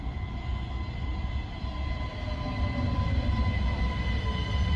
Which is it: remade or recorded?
recorded